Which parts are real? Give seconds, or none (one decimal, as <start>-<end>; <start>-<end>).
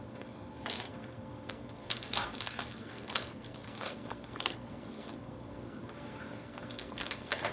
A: none